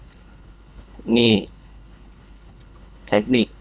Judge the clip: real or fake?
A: fake